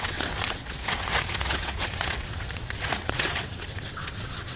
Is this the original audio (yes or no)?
no